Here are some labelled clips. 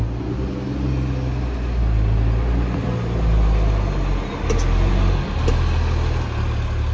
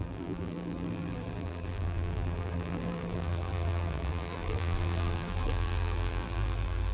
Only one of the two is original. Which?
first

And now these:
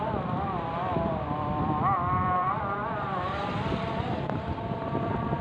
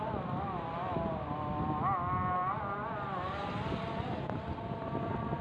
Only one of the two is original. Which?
second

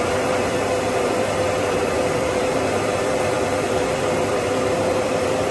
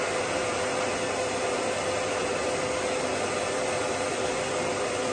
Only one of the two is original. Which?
second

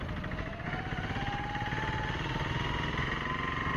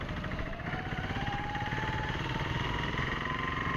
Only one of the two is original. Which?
first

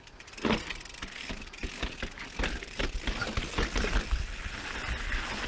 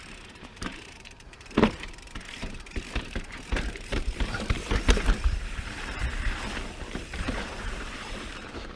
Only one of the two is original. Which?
first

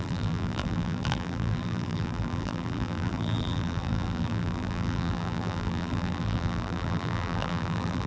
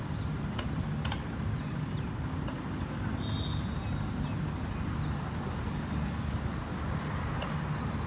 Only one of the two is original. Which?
second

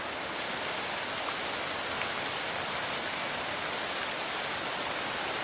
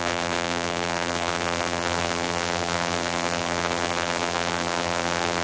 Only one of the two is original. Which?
first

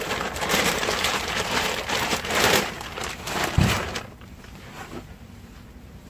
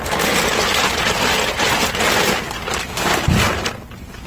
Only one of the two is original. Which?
second